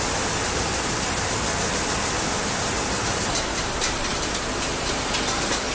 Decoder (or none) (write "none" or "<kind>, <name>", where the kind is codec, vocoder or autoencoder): none